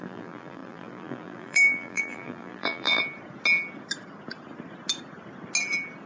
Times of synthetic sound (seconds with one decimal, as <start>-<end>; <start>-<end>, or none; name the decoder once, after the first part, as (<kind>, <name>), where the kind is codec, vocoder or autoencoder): 0.0-3.0 (vocoder, BigVGAN v2)